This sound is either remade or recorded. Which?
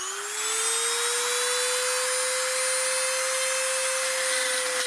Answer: recorded